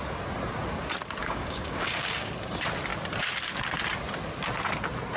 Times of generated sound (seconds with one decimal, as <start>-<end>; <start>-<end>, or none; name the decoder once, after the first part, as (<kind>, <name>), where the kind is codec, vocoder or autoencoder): 1.2-2.3 (codec, DAC)